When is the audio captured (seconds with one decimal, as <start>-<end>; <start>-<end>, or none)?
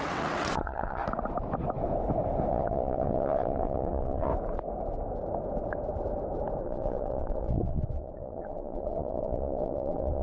1.0-2.5; 4.3-6.6